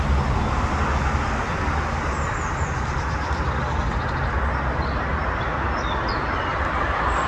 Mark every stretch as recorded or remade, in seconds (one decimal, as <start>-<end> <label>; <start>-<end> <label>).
0.0-7.3 recorded